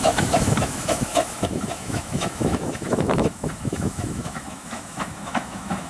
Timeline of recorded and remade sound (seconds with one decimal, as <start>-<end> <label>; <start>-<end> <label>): 0.0-5.9 remade